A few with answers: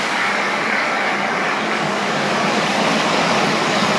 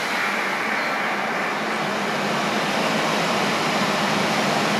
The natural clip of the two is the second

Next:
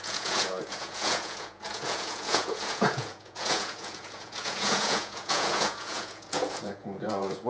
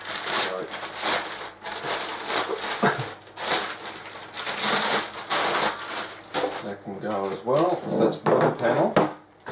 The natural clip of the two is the second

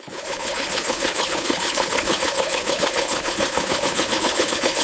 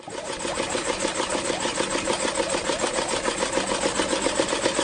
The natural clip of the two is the second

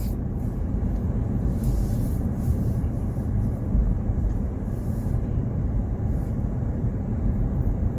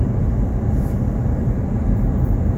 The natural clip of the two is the second